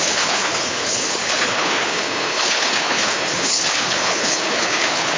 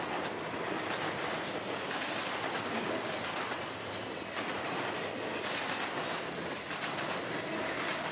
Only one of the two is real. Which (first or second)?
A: second